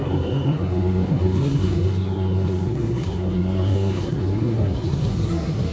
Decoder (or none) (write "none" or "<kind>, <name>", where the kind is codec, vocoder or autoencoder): codec, SNAC